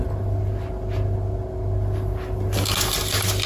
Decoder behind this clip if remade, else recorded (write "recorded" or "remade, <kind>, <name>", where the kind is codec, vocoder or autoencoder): recorded